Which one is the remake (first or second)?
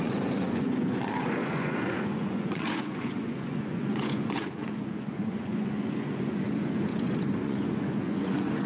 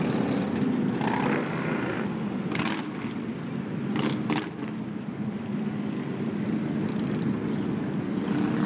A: first